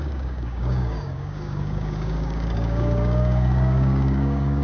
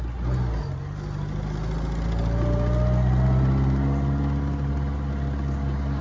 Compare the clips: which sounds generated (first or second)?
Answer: first